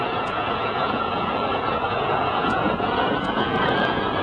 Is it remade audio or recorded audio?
remade